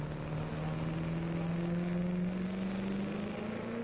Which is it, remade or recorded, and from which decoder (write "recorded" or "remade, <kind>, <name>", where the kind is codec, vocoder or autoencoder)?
recorded